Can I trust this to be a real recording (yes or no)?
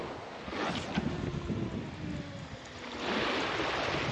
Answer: yes